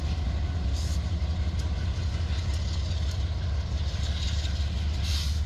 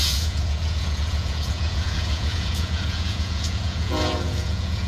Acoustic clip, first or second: first